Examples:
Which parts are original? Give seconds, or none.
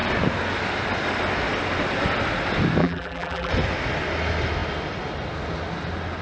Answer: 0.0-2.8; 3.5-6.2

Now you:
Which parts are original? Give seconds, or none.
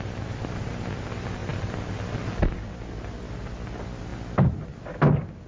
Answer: 0.0-5.5